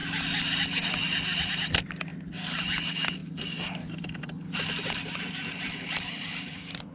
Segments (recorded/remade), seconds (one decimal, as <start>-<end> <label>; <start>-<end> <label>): 0.0-1.5 recorded; 1.5-2.1 remade; 2.1-2.8 recorded; 2.8-6.9 remade